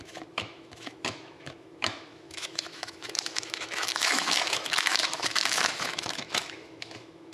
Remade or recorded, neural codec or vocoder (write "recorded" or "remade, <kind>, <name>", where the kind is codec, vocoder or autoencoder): remade, autoencoder, DAC-VAE